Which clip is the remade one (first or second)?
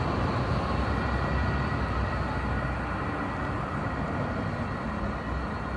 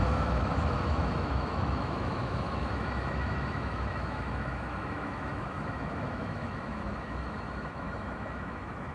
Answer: second